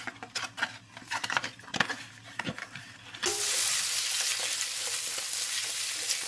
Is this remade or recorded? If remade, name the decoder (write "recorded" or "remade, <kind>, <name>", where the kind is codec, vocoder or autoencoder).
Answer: recorded